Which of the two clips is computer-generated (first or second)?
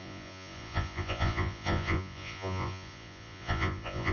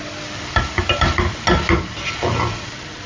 first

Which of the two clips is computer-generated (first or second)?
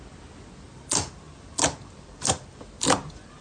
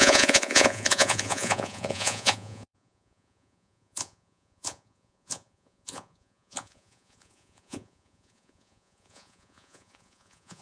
second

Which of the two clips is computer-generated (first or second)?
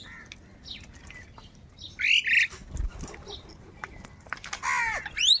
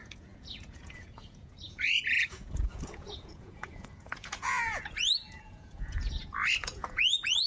second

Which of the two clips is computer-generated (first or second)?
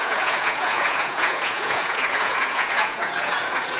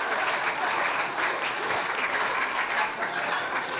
first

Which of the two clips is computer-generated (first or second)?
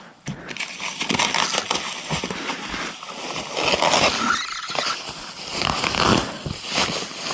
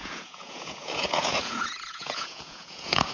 second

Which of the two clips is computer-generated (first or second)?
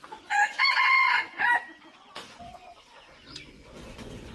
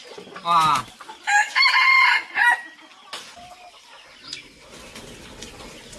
first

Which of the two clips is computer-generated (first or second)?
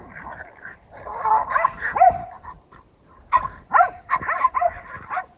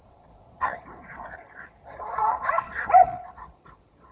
second